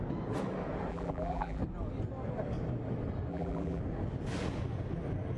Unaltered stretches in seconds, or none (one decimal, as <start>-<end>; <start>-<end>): 0.0-0.9; 1.6-3.3; 3.8-5.4